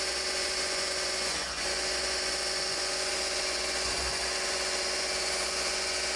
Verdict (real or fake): fake